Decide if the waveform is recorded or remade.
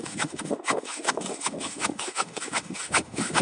remade